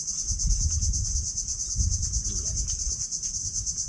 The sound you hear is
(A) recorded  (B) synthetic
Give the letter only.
B